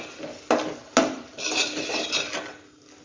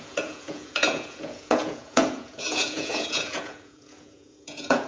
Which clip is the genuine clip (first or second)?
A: first